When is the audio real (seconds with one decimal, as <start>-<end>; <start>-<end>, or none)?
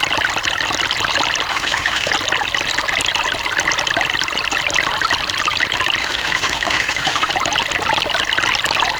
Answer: 0.0-1.5; 2.1-6.0; 7.3-9.0